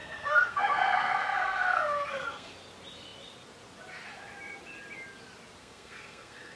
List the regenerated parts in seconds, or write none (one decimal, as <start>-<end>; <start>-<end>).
0.0-2.5; 5.6-6.6